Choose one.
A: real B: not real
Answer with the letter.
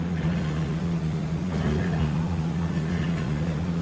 B